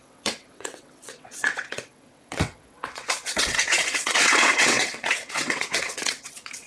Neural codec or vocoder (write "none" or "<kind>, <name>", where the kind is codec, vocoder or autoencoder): vocoder, WaveNeXt